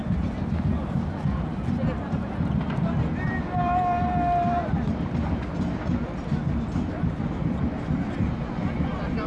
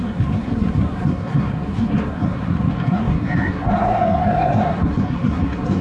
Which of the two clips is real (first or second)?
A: first